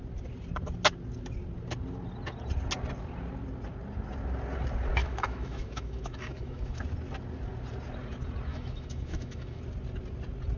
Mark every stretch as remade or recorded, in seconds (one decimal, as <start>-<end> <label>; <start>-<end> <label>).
0.0-5.0 recorded; 5.0-6.8 remade; 6.8-8.5 recorded; 8.5-9.6 remade; 9.6-10.6 recorded